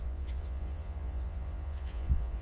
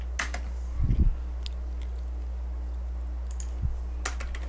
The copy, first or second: first